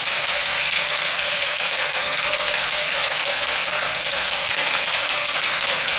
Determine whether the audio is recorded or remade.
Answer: remade